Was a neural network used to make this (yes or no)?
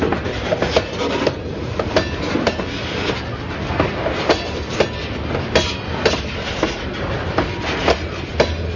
no